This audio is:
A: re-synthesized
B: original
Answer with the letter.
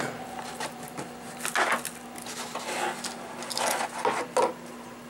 B